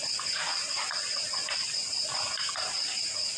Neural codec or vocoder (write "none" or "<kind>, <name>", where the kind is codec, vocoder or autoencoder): none